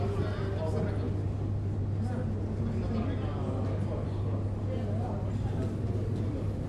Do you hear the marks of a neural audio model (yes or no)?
no